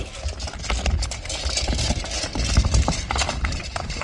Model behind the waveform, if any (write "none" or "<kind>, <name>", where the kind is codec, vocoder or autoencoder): none